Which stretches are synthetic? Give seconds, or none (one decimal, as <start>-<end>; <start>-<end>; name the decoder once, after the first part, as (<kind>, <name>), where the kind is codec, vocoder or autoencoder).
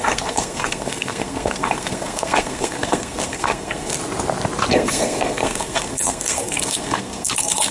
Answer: 0.0-4.0 (codec, SNAC); 4.7-7.7